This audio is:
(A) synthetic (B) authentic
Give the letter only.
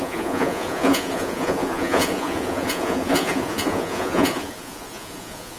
A